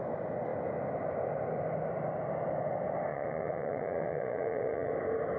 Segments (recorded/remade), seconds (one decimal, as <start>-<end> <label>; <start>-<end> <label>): 0.0-3.1 recorded; 3.1-4.9 remade; 4.9-5.4 recorded